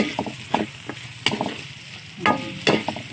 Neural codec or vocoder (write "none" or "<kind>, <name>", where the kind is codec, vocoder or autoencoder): none